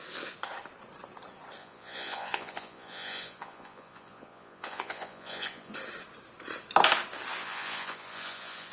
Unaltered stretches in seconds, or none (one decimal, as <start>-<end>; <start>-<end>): 0.0-1.6; 5.7-7.4